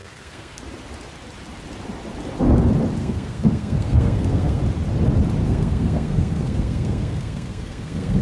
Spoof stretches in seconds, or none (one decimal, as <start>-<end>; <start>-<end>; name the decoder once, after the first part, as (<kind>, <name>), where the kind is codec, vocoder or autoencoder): 0.0-0.6 (codec, SNAC); 3.0-4.6; 5.4-8.2